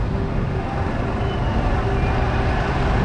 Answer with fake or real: real